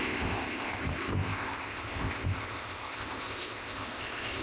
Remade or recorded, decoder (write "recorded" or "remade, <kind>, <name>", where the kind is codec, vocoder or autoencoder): remade, codec, ZipCodec